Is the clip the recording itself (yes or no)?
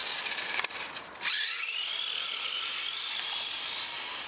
yes